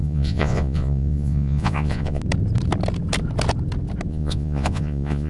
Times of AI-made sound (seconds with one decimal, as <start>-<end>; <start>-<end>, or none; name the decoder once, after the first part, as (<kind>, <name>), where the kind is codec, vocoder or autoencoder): 0.0-2.2 (vocoder, Vocos); 4.1-5.3

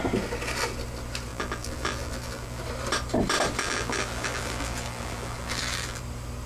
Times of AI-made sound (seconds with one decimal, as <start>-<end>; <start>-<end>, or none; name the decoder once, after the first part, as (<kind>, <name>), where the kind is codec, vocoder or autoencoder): 1.3-2.6 (vocoder, BigVGAN v2); 3.6-6.0

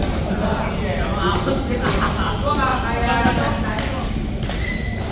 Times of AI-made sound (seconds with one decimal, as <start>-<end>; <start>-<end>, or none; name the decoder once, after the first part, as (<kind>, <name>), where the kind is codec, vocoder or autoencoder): none

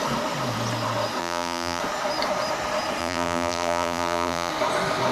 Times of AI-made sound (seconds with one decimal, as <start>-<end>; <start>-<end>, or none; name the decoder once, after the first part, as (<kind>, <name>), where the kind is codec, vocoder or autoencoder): 1.2-1.8 (vocoder, BigVGAN v2); 3.0-4.5

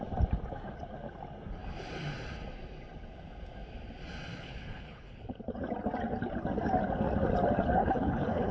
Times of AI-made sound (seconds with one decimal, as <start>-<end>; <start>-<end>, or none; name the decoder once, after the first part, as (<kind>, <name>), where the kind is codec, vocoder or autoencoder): 4.4-5.3 (codec, HILCodec); 7.8-8.5

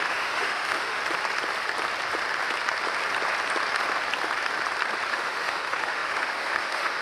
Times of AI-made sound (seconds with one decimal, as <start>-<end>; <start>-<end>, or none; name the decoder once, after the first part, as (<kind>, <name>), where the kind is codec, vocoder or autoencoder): 0.0-1.0 (autoencoder, DAC-VAE); 5.1-7.0

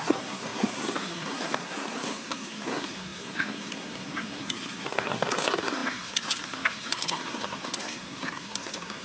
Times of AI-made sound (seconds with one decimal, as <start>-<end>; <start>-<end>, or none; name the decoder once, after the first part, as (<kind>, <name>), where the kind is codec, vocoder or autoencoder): 0.0-9.0 (codec, SNAC)

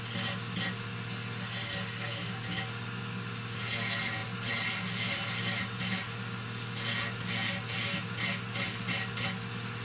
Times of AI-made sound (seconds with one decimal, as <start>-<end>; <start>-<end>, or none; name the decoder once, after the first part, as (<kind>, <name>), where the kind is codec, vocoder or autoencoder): none